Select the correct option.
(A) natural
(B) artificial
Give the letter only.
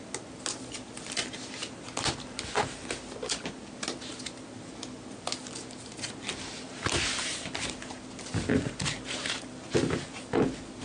A